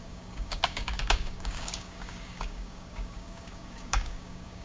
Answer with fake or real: fake